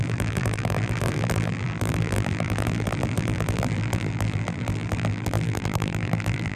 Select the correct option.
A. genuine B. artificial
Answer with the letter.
B